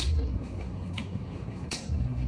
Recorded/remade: remade